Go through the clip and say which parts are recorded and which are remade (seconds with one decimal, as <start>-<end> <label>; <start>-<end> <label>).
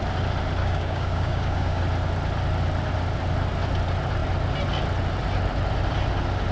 0.0-0.6 recorded; 0.6-1.8 remade; 1.8-6.5 recorded